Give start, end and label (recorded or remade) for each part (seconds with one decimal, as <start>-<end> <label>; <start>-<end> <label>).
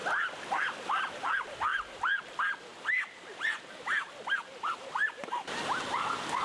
0.0-1.2 remade; 1.2-2.7 recorded; 2.7-5.3 remade; 5.3-6.4 recorded